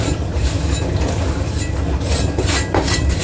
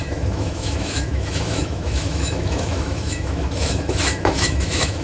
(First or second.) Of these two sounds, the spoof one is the second